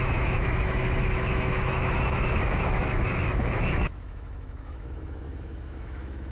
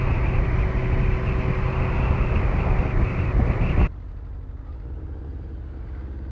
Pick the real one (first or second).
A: second